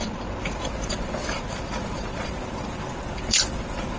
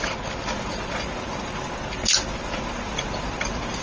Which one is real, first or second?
second